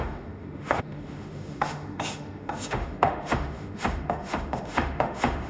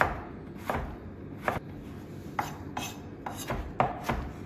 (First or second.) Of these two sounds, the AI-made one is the first